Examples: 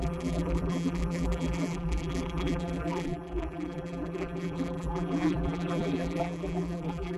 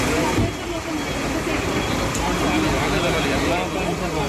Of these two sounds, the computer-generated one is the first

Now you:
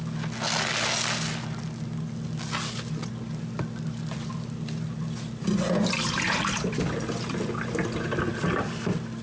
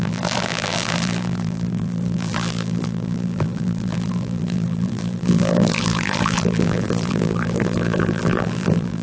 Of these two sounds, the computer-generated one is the second